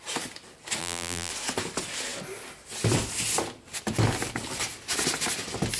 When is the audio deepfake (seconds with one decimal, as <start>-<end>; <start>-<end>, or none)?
0.8-1.3